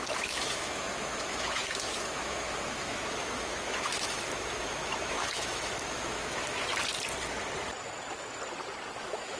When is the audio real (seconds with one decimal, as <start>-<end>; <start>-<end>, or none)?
6.7-9.0